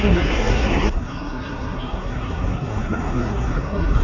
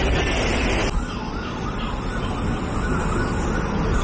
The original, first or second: second